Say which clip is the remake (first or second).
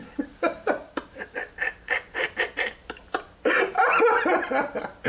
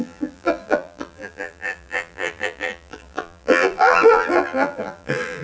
second